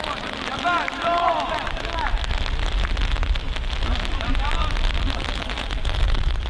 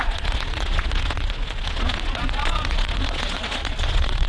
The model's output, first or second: second